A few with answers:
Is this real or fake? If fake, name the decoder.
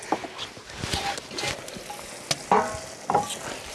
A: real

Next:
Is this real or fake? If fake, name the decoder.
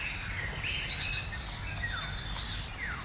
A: real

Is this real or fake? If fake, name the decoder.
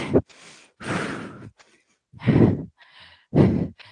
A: real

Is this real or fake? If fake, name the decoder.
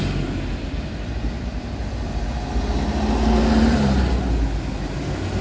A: real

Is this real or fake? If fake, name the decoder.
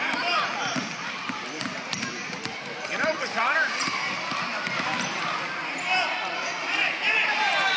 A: fake, vocoder, BigVGAN v2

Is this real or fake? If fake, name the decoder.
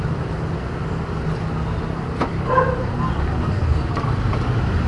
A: real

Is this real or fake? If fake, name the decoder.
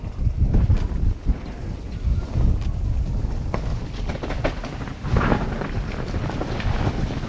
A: real